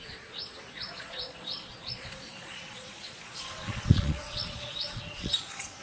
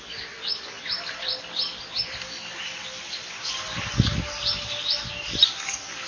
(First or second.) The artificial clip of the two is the first